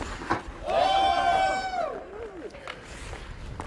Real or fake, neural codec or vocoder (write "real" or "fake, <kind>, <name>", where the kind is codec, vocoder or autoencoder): real